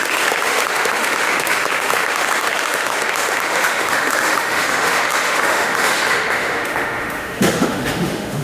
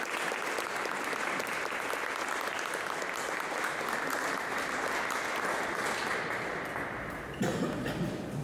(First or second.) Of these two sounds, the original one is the second